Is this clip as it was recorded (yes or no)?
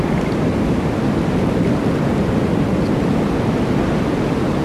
yes